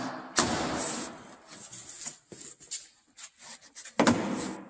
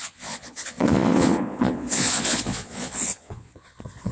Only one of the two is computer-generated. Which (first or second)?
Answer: second